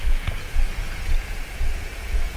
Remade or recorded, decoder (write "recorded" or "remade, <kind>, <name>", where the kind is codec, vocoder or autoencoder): remade, vocoder, Vocos